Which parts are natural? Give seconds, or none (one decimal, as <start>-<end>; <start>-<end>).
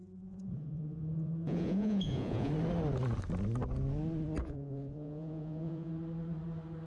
2.5-4.4; 5.9-6.9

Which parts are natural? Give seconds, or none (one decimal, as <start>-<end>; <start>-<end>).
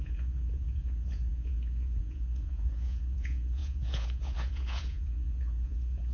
none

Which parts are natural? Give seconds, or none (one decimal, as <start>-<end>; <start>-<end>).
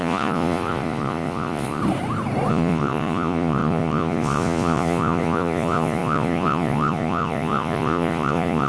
1.8-2.5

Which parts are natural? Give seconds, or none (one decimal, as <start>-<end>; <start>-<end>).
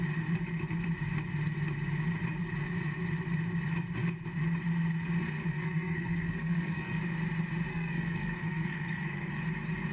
0.0-5.5; 7.0-7.7; 9.3-9.9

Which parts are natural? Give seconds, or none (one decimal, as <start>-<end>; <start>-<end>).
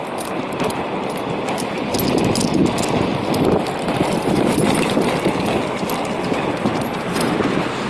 0.0-6.7; 7.3-7.9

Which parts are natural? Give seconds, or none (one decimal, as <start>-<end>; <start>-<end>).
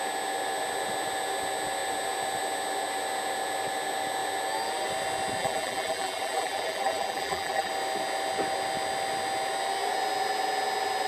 0.0-5.4; 7.7-11.1